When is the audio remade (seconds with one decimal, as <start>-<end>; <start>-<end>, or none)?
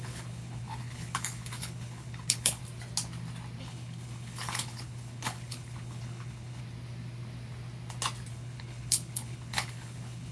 0.0-2.6; 3.6-6.6; 8.3-10.3